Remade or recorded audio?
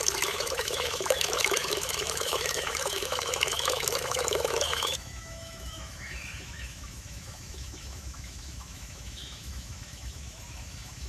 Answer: remade